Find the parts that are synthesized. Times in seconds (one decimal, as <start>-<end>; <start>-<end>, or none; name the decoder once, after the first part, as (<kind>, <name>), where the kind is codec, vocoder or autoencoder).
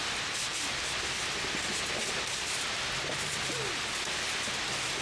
none